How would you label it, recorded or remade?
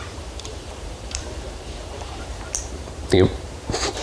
remade